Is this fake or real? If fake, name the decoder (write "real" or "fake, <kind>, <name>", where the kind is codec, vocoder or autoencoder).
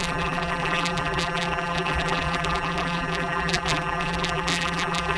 fake, vocoder, BigVGAN v2